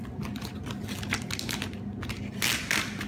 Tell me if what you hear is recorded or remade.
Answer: recorded